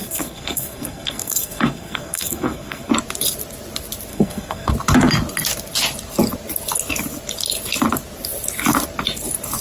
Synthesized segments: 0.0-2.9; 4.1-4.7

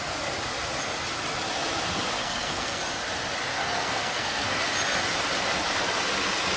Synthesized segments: 2.2-2.8; 3.5-4.6

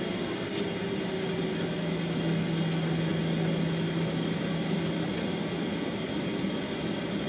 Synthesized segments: 1.5-2.0